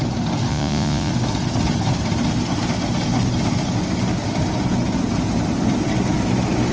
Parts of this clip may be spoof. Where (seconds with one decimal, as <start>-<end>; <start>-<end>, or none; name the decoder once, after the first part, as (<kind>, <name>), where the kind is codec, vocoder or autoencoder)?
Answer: 0.5-1.1 (vocoder, Vocos)